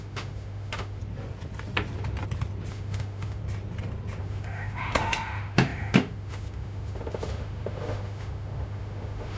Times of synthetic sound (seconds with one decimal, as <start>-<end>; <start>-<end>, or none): 0.0-1.0; 2.7-3.4; 4.2-9.4